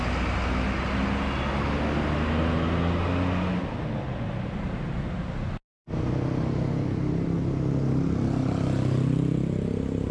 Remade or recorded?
recorded